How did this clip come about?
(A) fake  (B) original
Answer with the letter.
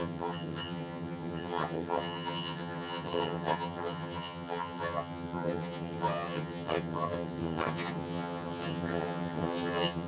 A